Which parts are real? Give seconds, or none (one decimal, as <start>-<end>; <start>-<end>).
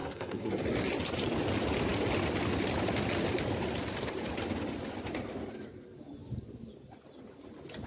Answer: 0.5-7.9